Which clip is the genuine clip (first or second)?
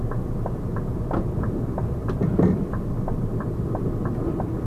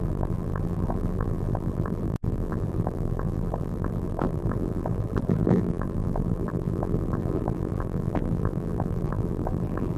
first